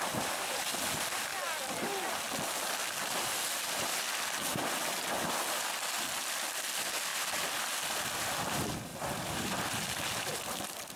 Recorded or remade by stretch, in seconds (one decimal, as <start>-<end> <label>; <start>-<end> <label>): 0.0-11.0 recorded